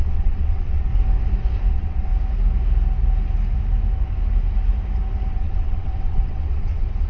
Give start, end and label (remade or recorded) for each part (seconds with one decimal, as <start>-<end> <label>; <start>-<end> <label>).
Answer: 0.0-0.9 remade; 0.9-1.7 recorded; 1.7-2.1 remade; 2.1-5.3 recorded; 5.3-7.1 remade